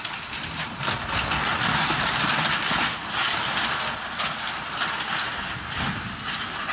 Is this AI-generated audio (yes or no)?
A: no